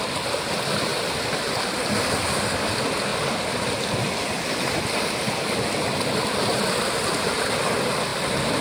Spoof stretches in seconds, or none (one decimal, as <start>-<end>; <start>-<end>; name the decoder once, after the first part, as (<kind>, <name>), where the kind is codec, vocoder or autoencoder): none